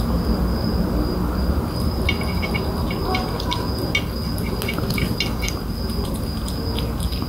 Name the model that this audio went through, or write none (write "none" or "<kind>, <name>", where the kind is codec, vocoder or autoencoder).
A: none